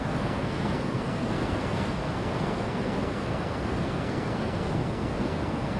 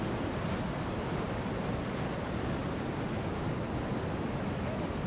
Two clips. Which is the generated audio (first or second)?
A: first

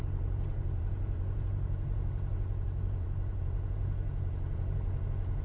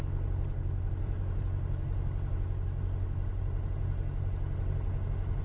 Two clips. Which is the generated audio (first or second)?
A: first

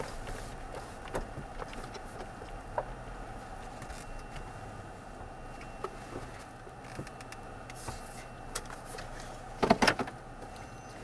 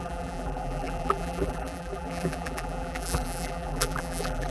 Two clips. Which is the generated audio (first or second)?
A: second